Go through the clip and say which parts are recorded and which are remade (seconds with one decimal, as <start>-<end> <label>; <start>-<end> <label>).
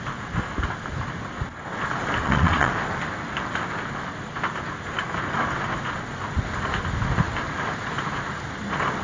0.0-2.2 recorded; 2.2-2.7 remade; 2.7-9.0 recorded